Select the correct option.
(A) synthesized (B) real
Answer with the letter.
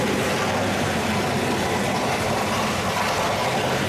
B